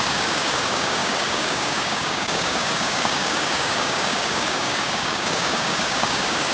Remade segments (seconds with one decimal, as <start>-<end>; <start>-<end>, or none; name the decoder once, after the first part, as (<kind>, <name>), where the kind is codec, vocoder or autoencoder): 0.0-6.5 (codec, DAC)